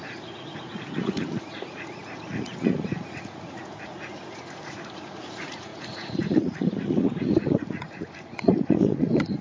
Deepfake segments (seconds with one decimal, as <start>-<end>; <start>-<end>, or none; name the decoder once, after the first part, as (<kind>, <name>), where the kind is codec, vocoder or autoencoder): 0.0-9.4 (vocoder, Vocos)